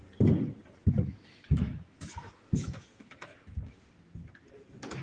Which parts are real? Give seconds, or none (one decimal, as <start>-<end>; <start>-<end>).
0.0-0.8; 3.8-5.0